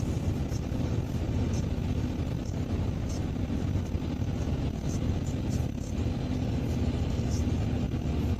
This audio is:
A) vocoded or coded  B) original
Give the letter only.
B